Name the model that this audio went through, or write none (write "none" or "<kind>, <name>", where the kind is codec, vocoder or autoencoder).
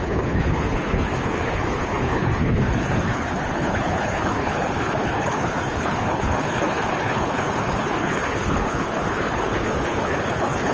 codec, HILCodec